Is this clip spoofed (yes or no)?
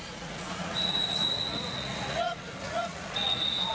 yes